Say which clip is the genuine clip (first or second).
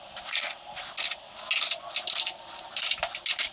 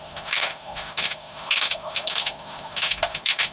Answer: first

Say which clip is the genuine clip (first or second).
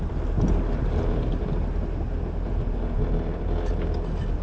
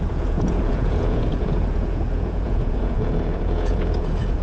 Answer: first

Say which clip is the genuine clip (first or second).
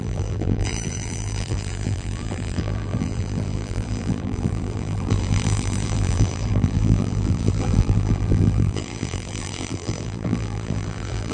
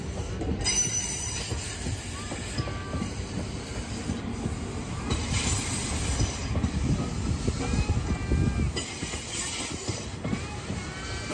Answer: second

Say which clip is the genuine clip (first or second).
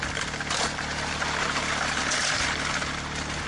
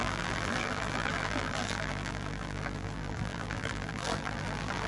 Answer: first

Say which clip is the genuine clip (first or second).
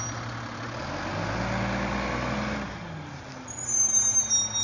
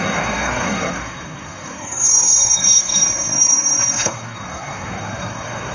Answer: first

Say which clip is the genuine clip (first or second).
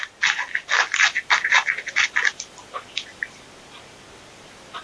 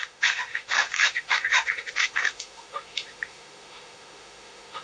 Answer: first